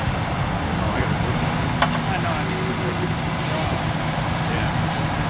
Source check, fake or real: real